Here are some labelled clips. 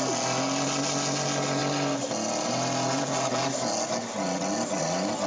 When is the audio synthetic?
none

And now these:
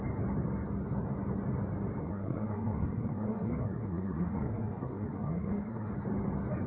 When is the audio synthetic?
2.0-5.9 (codec, SNAC)

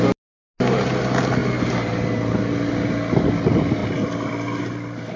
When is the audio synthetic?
none

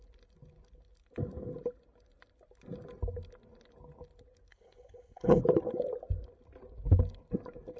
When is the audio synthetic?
4.5-5.4 (codec, HILCodec)